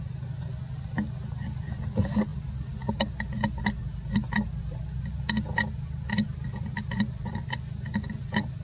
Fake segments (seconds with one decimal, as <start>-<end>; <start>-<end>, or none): 3.8-8.2